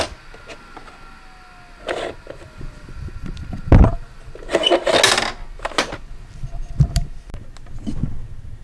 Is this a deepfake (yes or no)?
no